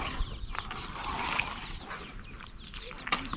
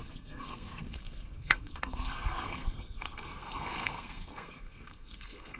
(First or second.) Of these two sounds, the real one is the first